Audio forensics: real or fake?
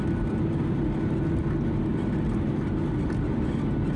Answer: real